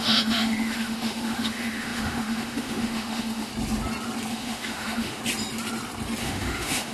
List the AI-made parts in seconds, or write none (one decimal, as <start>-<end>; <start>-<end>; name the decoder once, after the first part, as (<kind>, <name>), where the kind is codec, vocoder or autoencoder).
0.0-3.5 (autoencoder, DAC-VAE); 4.3-5.2; 6.2-6.9